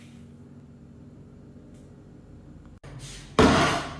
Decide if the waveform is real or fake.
real